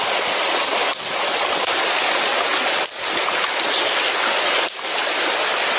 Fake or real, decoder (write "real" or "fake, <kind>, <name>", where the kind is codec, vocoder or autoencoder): real